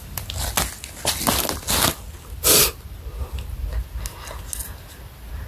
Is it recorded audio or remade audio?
recorded